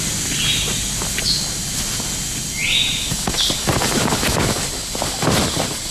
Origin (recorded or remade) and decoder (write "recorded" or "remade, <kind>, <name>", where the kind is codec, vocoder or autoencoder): recorded